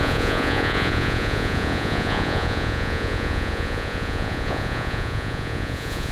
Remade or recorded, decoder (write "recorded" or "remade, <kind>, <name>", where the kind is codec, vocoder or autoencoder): remade, vocoder, Vocos